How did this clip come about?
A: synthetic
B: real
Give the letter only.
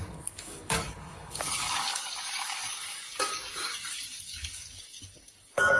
A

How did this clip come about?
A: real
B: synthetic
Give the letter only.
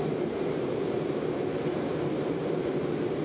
B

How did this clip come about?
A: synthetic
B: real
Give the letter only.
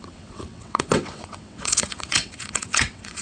A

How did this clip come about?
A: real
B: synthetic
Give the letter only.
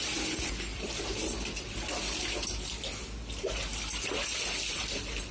A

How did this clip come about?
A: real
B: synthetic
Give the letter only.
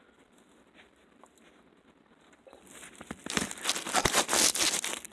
A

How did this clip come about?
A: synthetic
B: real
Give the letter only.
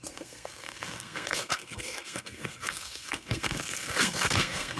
A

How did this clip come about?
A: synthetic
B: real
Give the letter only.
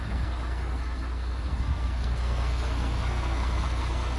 A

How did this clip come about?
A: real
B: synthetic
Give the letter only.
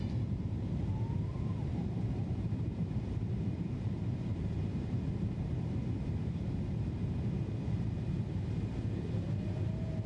B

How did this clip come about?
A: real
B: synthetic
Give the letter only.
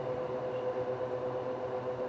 B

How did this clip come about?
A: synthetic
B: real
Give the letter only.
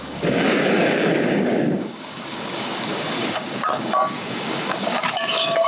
A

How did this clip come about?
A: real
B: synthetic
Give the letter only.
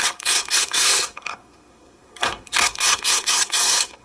B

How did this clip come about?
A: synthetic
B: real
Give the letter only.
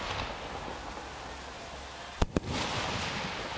B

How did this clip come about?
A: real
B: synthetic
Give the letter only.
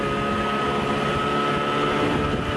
A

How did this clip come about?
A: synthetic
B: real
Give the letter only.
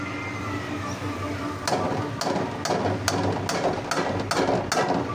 B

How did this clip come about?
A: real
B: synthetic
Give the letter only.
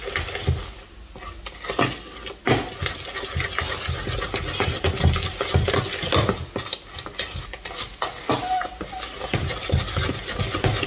A